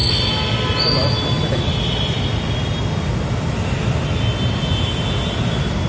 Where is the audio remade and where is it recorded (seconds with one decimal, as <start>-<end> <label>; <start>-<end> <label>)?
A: 0.0-5.9 recorded